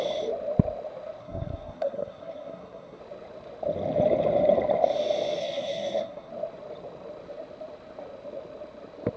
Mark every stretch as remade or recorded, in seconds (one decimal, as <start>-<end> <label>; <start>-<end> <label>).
0.0-1.2 recorded; 1.2-3.0 remade; 3.0-5.4 recorded; 5.4-6.3 remade; 6.3-9.2 recorded